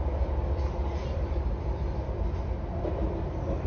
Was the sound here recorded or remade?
recorded